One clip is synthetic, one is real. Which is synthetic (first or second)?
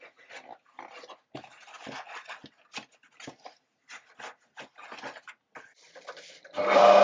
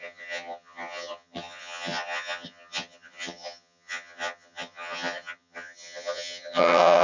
second